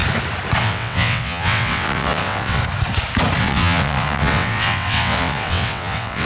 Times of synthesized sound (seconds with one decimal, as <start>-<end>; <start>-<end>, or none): 0.6-2.6; 3.4-6.3